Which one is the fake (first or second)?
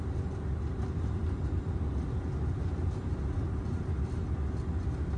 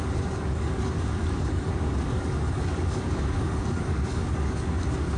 second